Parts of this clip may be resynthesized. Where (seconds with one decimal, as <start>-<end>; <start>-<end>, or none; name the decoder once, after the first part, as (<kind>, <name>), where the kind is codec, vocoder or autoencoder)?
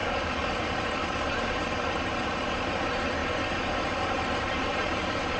0.6-5.4 (vocoder, BigVGAN v2)